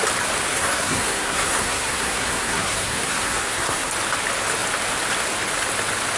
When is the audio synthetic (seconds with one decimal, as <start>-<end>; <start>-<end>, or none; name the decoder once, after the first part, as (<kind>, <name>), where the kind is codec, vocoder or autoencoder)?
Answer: 0.5-3.9 (codec, SNAC)